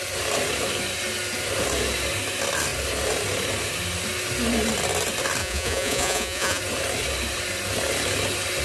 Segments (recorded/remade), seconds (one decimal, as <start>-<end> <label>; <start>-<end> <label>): 0.0-5.4 recorded; 5.4-6.6 remade; 6.6-8.6 recorded